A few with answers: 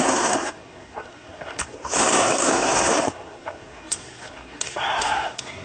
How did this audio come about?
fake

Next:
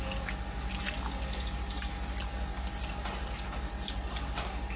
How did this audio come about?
real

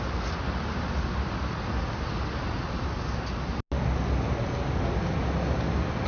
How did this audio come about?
real